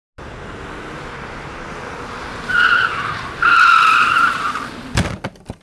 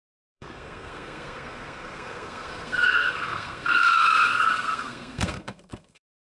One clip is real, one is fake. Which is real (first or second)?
first